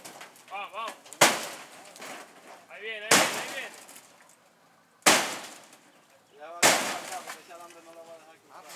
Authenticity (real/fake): real